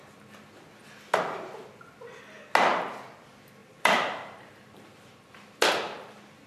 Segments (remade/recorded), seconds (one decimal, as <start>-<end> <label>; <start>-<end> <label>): 0.0-3.6 recorded; 3.6-5.7 remade; 5.7-6.5 recorded